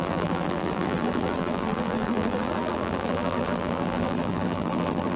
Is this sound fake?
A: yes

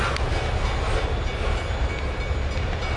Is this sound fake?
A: no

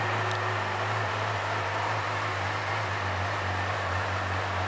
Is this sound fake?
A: no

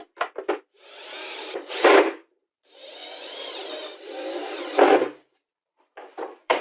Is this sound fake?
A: yes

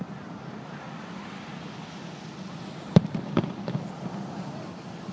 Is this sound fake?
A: yes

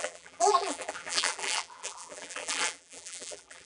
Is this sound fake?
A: yes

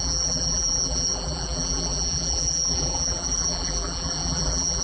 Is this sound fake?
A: yes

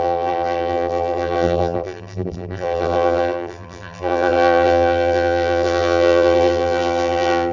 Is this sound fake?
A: yes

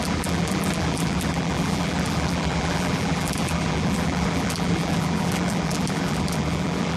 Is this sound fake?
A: yes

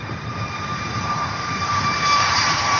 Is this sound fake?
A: yes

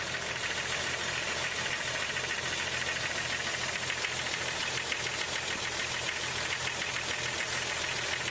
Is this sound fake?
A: no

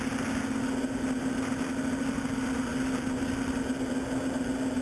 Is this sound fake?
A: no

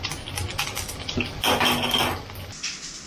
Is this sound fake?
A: no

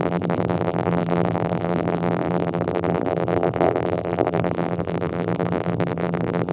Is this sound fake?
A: yes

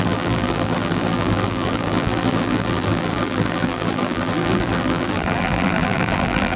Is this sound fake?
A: yes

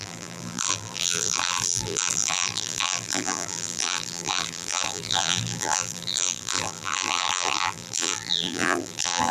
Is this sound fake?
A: yes